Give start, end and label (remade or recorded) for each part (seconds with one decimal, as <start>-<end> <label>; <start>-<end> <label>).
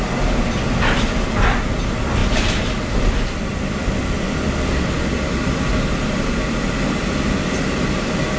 0.0-8.4 recorded